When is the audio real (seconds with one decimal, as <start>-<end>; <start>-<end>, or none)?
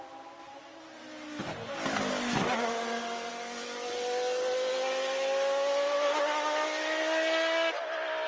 0.0-8.3